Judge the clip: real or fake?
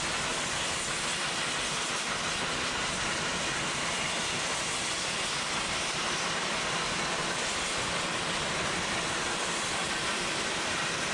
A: real